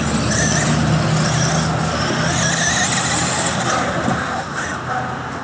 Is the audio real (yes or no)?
yes